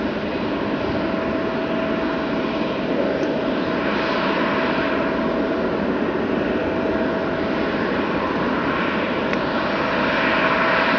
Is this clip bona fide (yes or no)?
yes